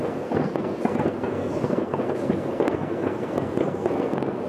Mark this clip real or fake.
fake